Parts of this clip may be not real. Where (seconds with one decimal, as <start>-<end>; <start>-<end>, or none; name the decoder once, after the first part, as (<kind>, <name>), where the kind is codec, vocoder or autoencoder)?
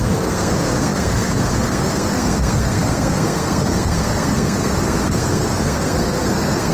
0.0-6.7 (codec, SNAC)